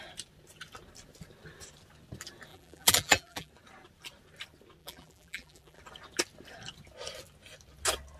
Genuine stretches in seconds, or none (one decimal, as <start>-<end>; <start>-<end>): 0.0-2.5; 3.5-4.8; 5.8-8.2